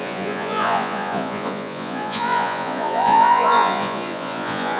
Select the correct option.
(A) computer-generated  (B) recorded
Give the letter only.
A